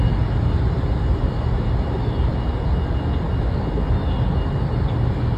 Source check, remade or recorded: recorded